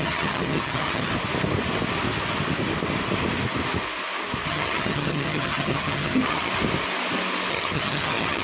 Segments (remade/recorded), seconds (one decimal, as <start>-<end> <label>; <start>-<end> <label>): 0.0-1.1 remade; 1.1-4.5 recorded; 4.5-6.5 remade; 6.5-7.5 recorded; 7.5-8.4 remade